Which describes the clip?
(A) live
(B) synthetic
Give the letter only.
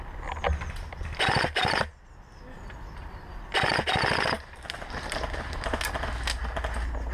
A